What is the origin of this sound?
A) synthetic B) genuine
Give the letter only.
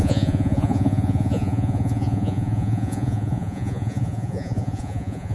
A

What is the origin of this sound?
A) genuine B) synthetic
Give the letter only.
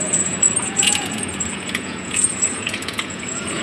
B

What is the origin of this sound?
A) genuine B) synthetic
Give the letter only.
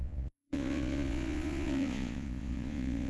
B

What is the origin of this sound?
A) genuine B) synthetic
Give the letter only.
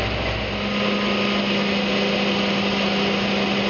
A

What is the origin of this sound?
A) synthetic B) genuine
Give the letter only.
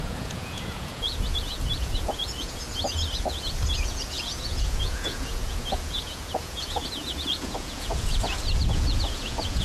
A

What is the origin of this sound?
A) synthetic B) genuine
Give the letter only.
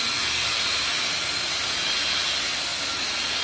B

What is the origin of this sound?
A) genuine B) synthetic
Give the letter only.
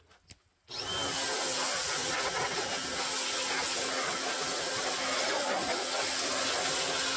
A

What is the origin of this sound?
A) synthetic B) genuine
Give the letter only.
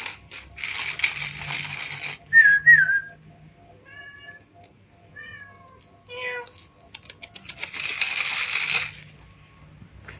B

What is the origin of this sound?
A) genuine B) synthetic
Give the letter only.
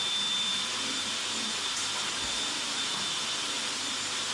A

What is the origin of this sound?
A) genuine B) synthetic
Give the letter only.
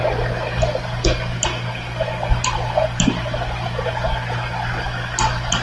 A